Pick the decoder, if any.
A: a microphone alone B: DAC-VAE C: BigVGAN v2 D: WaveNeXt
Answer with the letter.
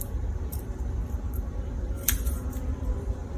C